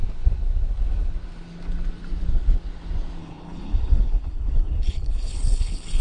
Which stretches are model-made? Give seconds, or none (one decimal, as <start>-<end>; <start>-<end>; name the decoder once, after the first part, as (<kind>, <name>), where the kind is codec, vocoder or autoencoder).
3.2-6.0 (codec, HILCodec)

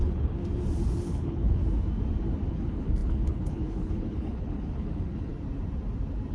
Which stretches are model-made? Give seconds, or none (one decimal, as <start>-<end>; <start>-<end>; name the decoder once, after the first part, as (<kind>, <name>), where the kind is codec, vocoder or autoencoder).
0.0-0.4 (codec, HILCodec); 1.0-1.6; 2.5-5.3

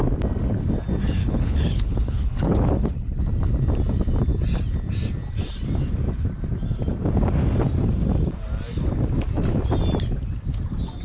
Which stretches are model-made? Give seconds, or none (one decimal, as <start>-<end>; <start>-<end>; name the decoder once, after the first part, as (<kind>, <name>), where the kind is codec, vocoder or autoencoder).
1.2-3.2 (codec, HILCodec)

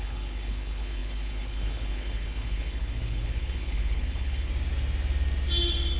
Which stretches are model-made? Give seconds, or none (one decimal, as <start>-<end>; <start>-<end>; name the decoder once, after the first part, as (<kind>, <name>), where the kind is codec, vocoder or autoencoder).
0.0-4.5 (codec, HILCodec)

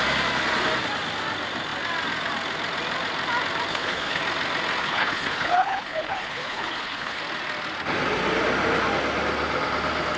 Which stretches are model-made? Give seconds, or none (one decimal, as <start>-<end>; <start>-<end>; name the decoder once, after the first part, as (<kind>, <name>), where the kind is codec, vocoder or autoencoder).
3.7-4.2 (codec, HILCodec); 4.8-7.2

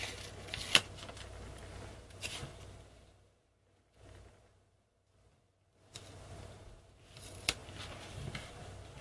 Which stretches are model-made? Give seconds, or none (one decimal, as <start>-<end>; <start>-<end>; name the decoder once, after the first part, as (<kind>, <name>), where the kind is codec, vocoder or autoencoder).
none

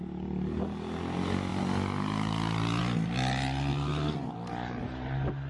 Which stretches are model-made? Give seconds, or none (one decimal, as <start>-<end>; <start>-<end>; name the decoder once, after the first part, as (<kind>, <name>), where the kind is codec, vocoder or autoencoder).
none

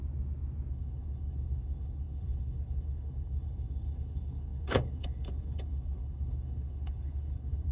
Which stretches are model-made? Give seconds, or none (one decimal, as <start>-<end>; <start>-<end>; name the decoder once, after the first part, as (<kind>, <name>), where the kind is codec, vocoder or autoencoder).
0.7-7.7 (codec, HILCodec)